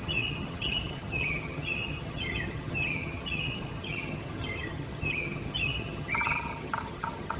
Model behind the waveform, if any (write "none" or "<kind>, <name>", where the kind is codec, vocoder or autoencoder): vocoder, HiFi-GAN